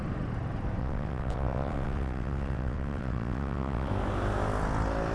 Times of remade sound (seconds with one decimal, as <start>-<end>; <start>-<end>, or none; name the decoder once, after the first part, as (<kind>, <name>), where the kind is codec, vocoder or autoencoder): 0.8-3.9 (vocoder, WaveNeXt)